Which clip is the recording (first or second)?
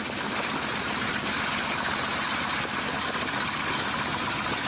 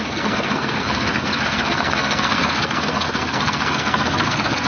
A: first